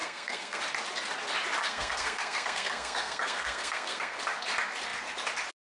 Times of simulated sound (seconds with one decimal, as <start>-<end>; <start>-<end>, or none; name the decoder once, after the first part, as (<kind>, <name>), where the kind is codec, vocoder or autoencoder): 0.0-0.6 (codec, SNAC); 1.6-4.2

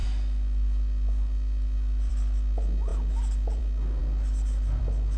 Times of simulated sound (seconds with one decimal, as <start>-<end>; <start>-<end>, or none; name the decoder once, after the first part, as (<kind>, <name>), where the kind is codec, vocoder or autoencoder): none

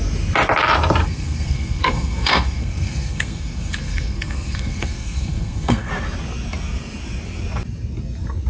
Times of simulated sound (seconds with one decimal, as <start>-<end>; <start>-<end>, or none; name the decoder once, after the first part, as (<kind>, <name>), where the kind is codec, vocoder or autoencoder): 1.0-5.9 (codec, SNAC)